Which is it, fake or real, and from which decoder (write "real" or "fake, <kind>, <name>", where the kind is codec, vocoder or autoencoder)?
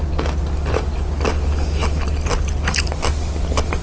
real